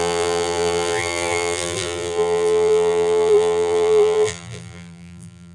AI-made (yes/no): yes